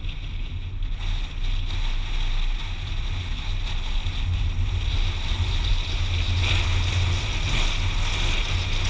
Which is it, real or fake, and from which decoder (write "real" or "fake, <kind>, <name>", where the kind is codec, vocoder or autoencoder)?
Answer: real